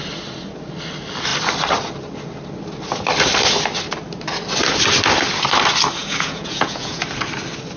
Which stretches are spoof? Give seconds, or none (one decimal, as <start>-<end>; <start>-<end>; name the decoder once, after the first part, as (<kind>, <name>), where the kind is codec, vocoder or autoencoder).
6.0-7.0 (vocoder, Vocos)